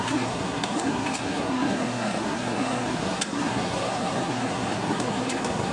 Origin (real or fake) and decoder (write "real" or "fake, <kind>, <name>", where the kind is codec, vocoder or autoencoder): fake, codec, SNAC